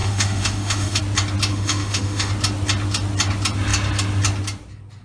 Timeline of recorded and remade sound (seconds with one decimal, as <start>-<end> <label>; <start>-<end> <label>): 0.0-1.0 remade; 1.0-1.5 recorded; 1.5-2.3 remade; 2.3-5.0 recorded